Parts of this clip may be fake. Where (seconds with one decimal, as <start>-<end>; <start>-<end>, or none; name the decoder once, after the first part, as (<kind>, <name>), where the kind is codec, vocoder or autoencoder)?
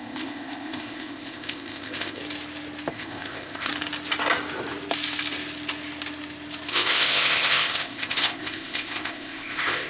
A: 0.0-2.2 (codec, ZipCodec); 2.9-3.7; 6.7-9.9